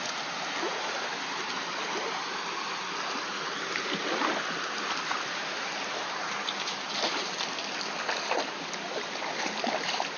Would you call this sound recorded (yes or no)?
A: yes